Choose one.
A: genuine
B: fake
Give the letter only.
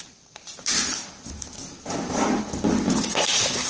A